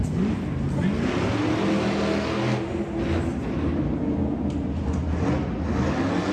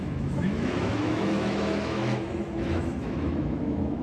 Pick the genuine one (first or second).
first